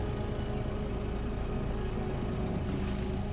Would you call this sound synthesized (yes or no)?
no